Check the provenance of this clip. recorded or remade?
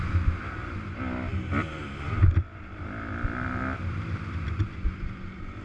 recorded